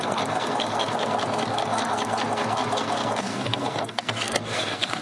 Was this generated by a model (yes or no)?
yes